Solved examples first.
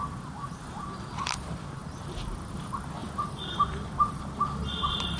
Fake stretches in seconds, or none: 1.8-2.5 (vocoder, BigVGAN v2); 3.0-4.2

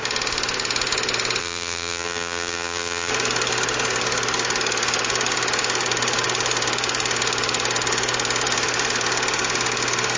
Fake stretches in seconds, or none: 1.4-3.1 (vocoder, BigVGAN v2)

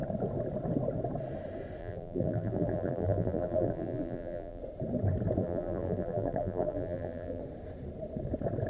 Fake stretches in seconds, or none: 1.8-4.6 (vocoder, BigVGAN v2); 5.4-7.4